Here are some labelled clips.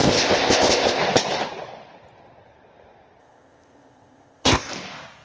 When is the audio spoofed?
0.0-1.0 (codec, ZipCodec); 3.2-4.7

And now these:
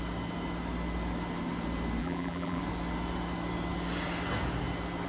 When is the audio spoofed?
2.0-2.6 (vocoder, BigVGAN v2)

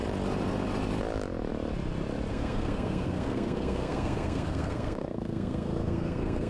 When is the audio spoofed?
2.3-6.5 (codec, SNAC)

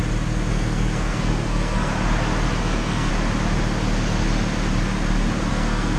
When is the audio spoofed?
0.5-1.9 (codec, SNAC); 2.6-3.1; 5.5-6.0

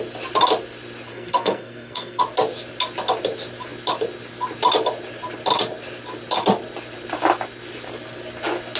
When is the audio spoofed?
1.1-2.2 (codec, SNAC)

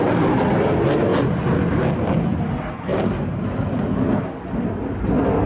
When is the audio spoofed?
2.9-3.6 (vocoder, BigVGAN v2)